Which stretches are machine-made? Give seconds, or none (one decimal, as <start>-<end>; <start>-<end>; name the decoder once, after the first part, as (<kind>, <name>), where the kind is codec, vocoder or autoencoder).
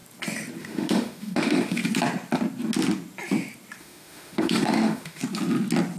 0.6-1.8 (autoencoder, DAC-VAE); 3.8-5.2